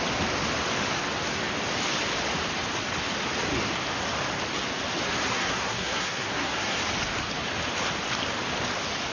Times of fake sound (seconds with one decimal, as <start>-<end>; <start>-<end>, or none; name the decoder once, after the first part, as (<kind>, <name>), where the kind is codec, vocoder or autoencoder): 5.3-6.8 (codec, SNAC)